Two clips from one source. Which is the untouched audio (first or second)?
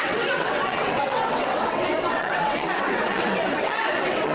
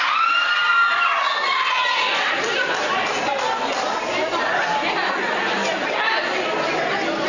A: second